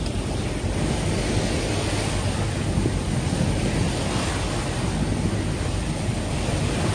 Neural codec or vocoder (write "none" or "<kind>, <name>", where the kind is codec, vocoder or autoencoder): none